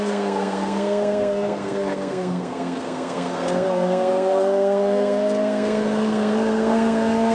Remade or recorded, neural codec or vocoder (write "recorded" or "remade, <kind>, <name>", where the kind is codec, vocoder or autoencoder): remade, codec, SNAC